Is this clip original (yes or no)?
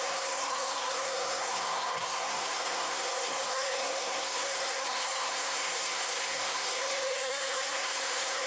no